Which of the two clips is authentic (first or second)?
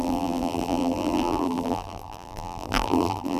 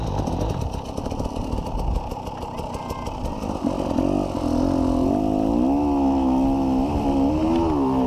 second